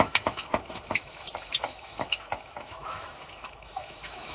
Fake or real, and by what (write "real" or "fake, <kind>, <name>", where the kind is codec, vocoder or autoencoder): fake, autoencoder, DAC-VAE